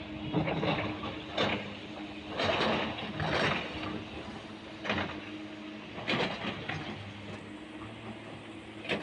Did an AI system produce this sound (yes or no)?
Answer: no